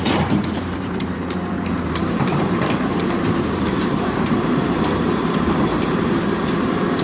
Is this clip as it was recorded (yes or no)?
no